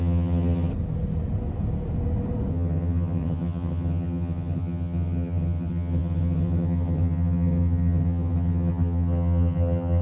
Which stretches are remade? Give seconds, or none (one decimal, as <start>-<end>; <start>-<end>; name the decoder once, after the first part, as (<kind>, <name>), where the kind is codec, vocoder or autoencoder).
0.0-0.7 (vocoder, HiFi-GAN); 2.5-10.0